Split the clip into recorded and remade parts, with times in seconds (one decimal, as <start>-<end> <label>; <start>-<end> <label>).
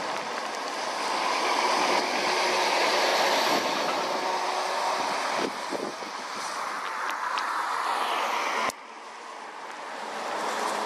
0.0-3.1 recorded; 3.1-6.4 remade; 6.4-10.9 recorded